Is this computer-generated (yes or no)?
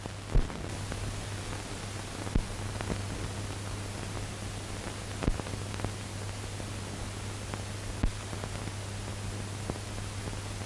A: no